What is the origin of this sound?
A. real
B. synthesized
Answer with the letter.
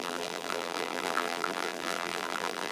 B